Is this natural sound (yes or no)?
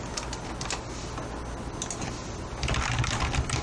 yes